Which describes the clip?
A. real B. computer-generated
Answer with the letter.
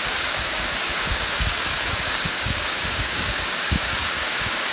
B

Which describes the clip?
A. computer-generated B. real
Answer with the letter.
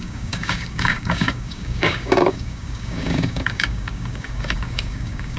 A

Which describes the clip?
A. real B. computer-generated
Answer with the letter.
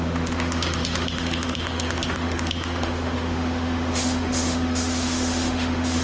B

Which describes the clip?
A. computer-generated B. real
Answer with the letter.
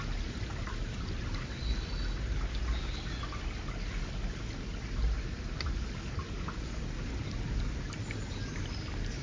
B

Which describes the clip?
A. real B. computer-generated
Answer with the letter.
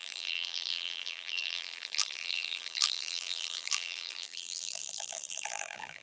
B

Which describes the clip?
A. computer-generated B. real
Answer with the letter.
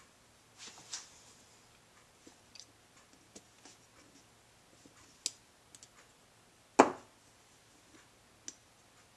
B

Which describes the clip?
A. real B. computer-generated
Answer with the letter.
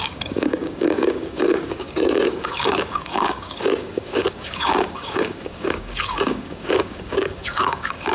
B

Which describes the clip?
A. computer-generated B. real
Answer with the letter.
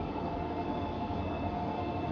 A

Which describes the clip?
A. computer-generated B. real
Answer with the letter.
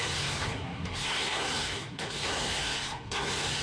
A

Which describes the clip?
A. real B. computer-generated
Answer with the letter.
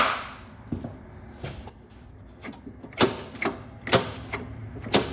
A